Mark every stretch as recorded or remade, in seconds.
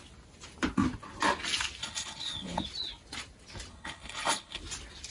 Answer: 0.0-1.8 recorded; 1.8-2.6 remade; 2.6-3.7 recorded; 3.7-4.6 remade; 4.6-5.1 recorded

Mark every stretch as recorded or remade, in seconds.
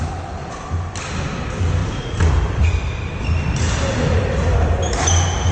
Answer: 0.0-1.8 recorded; 1.8-4.9 remade; 4.9-5.5 recorded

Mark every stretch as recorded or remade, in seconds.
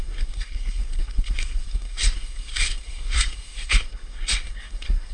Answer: 0.0-5.1 remade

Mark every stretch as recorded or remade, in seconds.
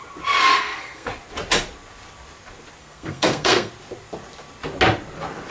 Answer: 0.0-0.5 recorded; 0.5-1.1 remade; 1.1-2.8 recorded; 2.8-3.7 remade; 3.7-5.5 recorded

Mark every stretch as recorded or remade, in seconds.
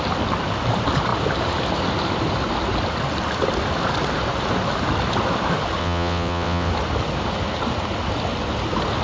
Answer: 0.0-5.8 recorded; 5.8-6.7 remade; 6.7-9.0 recorded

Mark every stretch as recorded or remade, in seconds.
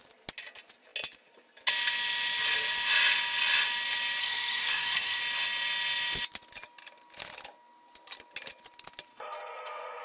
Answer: 0.0-4.2 recorded; 4.2-5.2 remade; 5.2-9.1 recorded; 9.1-10.0 remade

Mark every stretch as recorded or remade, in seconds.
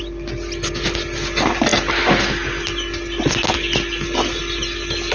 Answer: 0.0-5.1 recorded